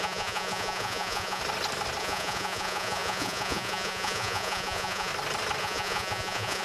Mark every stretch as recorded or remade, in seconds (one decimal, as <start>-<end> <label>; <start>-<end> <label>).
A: 0.0-1.4 remade; 1.4-2.0 recorded; 2.0-5.1 remade; 5.1-5.6 recorded; 5.6-6.6 remade